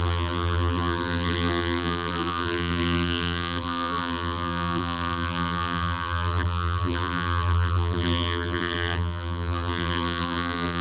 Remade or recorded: remade